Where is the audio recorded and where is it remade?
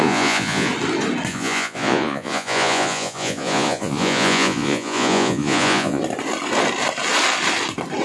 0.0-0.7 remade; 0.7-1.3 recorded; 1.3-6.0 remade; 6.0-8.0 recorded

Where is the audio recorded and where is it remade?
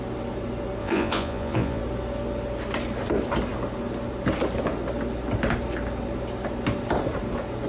0.0-0.8 recorded; 0.8-1.8 remade; 1.8-7.7 recorded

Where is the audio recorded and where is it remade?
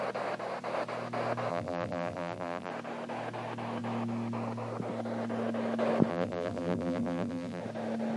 0.0-1.5 recorded; 1.5-2.7 remade; 2.7-6.1 recorded; 6.1-7.6 remade; 7.6-8.2 recorded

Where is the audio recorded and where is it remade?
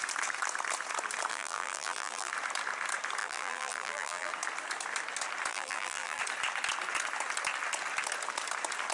0.0-1.3 recorded; 1.3-2.3 remade; 2.3-3.2 recorded; 3.2-4.3 remade; 4.3-5.5 recorded; 5.5-6.2 remade; 6.2-8.9 recorded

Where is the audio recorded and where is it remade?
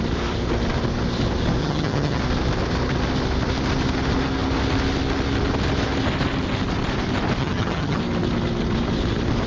0.0-1.6 recorded; 1.6-2.2 remade; 2.2-7.4 recorded; 7.4-8.0 remade; 8.0-9.5 recorded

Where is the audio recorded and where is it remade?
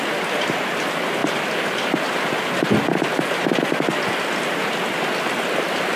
0.0-6.0 recorded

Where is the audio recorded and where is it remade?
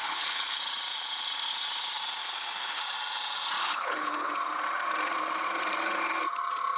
0.0-0.6 remade; 0.6-2.2 recorded; 2.2-2.8 remade; 2.8-3.6 recorded; 3.6-4.3 remade; 4.3-6.8 recorded